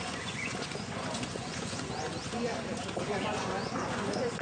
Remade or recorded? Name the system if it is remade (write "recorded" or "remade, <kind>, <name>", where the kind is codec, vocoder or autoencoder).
remade, vocoder, Vocos